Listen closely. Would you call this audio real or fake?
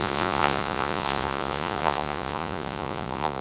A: fake